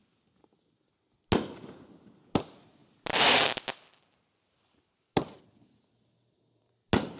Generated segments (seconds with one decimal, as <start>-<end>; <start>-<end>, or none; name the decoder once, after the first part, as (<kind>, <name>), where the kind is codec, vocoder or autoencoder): none